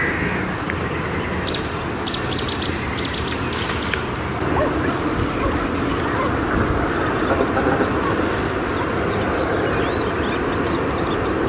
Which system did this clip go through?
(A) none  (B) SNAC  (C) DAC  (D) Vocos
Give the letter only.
A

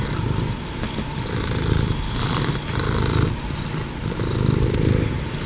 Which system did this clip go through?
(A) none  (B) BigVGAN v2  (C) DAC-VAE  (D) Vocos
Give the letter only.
A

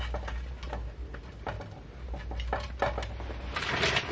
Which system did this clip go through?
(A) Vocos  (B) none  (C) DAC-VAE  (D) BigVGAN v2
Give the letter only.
B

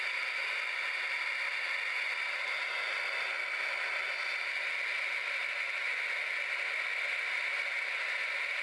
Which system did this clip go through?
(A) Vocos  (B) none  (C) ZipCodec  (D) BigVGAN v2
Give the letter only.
B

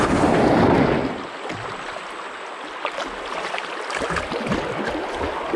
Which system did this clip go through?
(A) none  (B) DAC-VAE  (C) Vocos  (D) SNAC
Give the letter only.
A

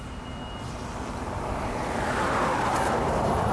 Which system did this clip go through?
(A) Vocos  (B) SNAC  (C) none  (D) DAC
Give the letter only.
C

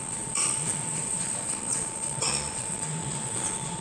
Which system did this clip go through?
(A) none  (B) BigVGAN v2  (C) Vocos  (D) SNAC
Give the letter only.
C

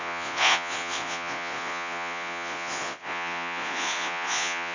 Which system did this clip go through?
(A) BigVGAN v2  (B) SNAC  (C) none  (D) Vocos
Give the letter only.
D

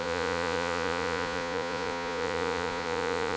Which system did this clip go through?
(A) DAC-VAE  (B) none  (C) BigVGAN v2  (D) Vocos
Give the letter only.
D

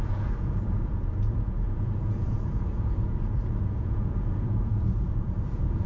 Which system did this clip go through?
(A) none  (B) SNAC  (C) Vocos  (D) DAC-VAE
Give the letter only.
C